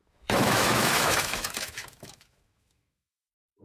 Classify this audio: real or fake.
fake